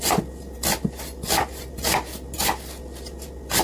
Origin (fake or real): real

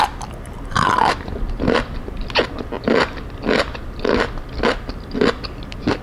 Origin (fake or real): real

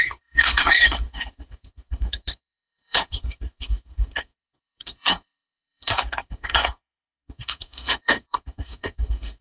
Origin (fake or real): fake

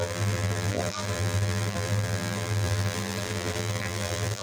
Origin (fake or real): fake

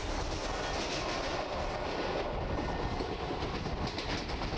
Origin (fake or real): real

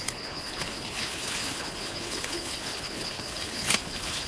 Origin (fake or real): fake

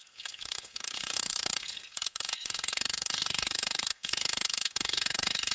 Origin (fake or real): fake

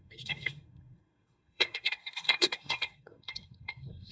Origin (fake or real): fake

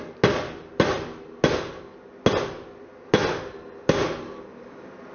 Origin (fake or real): real